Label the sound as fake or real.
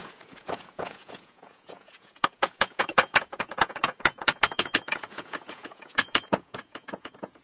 fake